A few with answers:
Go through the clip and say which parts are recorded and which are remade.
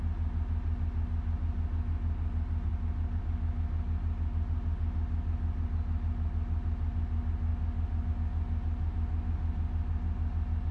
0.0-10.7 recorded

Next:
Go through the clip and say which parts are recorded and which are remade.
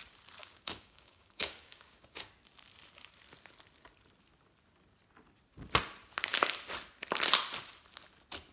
0.0-0.4 recorded; 0.4-2.3 remade; 2.3-8.5 recorded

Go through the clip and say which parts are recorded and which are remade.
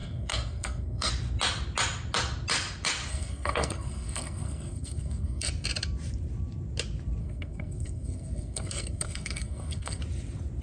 0.0-1.1 remade; 1.1-3.1 recorded; 3.1-5.5 remade; 5.5-7.2 recorded; 7.2-10.0 remade; 10.0-10.6 recorded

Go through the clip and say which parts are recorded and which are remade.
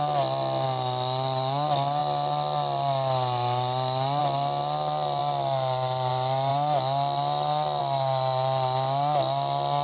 0.0-9.8 recorded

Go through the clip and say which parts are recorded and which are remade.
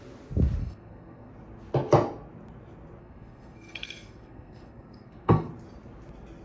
0.0-0.6 recorded; 0.6-1.3 remade; 1.3-3.0 recorded; 3.0-5.5 remade; 5.5-6.4 recorded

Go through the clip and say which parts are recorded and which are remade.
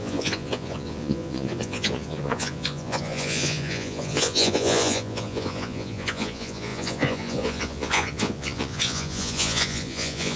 0.0-10.4 remade